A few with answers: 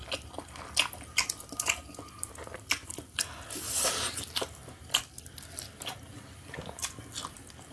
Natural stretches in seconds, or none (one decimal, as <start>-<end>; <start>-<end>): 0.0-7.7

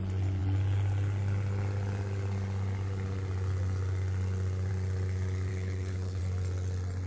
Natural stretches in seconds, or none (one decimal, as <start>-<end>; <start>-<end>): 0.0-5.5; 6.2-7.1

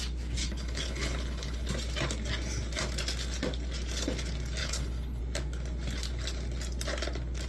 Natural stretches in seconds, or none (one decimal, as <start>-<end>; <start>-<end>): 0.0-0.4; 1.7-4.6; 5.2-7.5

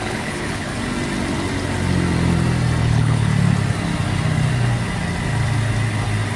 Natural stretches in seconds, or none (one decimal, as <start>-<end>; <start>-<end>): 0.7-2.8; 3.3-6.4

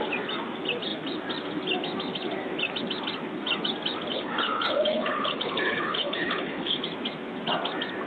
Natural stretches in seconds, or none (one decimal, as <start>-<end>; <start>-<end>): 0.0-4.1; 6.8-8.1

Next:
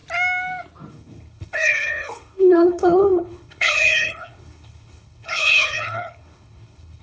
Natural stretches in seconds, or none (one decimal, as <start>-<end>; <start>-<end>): 0.0-0.9